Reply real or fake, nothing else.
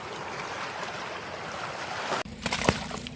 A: real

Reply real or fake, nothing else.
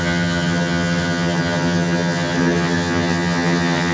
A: fake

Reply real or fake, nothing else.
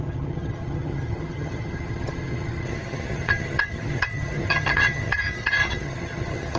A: fake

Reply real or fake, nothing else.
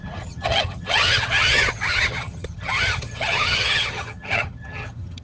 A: fake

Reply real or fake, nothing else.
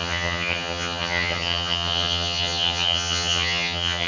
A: fake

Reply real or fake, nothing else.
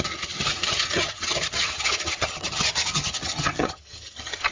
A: fake